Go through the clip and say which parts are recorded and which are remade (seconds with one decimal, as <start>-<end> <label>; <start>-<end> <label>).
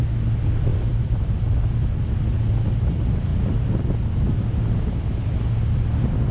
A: 0.0-0.7 recorded; 0.7-2.3 remade; 2.3-6.3 recorded